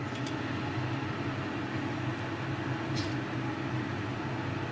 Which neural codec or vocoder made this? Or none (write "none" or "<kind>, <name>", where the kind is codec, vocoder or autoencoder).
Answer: none